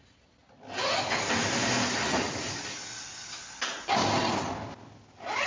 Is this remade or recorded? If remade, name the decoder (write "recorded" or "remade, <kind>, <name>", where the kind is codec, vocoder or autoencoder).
recorded